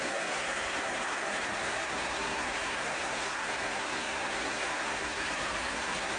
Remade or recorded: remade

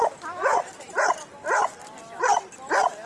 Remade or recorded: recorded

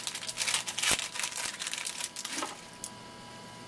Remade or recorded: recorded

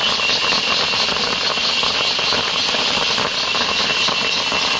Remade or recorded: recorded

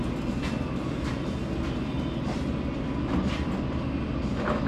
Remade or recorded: recorded